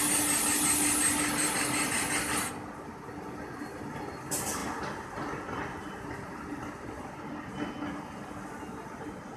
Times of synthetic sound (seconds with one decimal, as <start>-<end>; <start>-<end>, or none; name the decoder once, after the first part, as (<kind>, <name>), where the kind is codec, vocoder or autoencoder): none